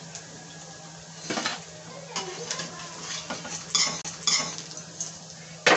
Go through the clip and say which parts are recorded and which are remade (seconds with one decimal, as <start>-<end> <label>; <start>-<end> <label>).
0.0-5.8 recorded